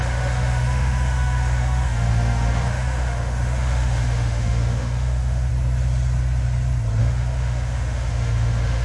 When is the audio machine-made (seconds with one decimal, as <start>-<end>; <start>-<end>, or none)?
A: 0.0-5.5; 7.0-8.8